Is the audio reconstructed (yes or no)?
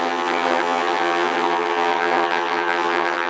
yes